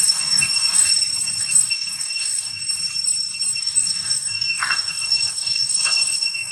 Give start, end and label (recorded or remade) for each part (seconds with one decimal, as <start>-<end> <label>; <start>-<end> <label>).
0.0-0.9 remade; 0.9-1.4 recorded; 1.4-2.6 remade; 2.6-3.6 recorded; 3.6-6.5 remade